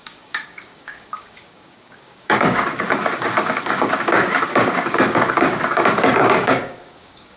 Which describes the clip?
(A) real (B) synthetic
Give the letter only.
B